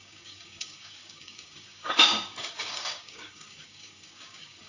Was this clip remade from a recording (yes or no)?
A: yes